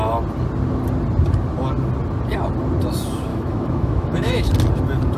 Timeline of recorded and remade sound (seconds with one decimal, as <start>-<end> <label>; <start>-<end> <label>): 0.0-3.3 recorded; 3.3-4.5 remade; 4.5-5.2 recorded